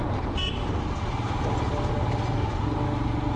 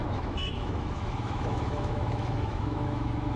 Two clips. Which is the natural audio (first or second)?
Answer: first